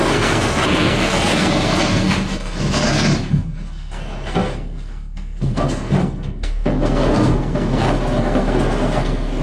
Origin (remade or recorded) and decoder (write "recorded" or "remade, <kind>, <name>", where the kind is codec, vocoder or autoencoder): remade, codec, SNAC